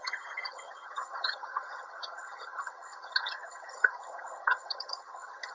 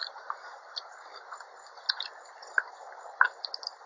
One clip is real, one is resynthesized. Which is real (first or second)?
second